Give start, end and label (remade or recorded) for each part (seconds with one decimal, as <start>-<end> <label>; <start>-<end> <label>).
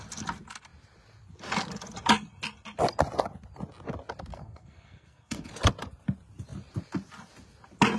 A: 0.0-4.3 recorded; 4.3-5.5 remade; 5.5-8.0 recorded